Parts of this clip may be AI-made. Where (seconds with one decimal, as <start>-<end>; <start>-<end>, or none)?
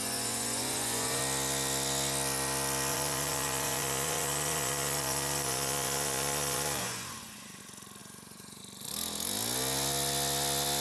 0.0-1.2; 2.9-7.6; 8.0-8.6